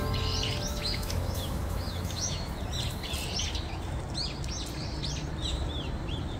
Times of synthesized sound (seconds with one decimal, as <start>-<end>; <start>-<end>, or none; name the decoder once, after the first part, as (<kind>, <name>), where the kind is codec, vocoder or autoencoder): 0.7-2.5 (autoencoder, DAC-VAE)